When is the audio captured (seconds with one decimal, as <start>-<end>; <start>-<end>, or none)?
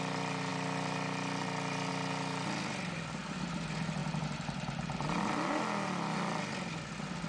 0.0-7.3